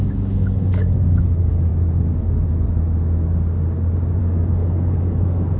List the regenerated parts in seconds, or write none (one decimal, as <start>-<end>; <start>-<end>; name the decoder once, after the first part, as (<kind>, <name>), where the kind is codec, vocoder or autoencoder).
0.0-1.7 (codec, DAC); 4.2-5.6